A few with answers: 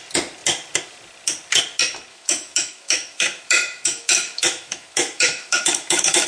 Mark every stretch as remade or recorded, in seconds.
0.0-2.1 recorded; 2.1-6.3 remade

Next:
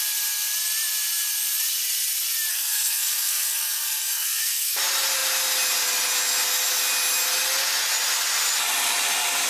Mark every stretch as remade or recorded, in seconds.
0.0-2.5 recorded; 2.5-4.8 remade; 4.8-9.5 recorded

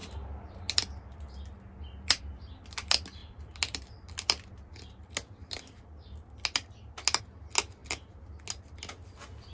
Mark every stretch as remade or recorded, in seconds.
0.0-9.5 recorded